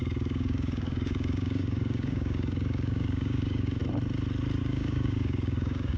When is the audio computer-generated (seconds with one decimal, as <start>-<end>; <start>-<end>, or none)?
0.0-3.8; 4.6-6.0